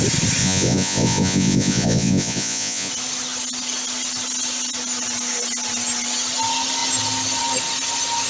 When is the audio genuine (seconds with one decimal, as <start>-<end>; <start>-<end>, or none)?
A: 0.0-0.4; 2.9-8.3